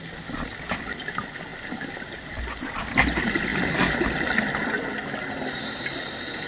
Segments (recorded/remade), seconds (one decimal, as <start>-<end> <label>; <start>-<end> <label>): 0.0-6.5 recorded